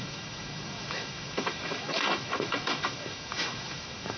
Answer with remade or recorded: remade